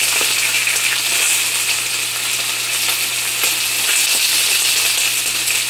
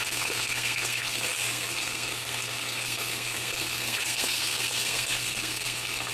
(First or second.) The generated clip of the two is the second